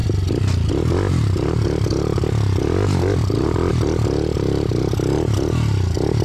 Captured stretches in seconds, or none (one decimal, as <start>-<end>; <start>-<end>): 0.0-6.2